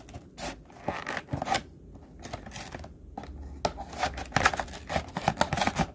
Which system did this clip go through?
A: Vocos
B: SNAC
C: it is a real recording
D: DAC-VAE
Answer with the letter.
C